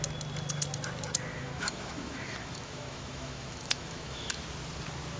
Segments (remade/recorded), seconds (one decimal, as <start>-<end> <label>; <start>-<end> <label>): 0.0-1.3 recorded; 1.3-4.4 remade; 4.4-5.2 recorded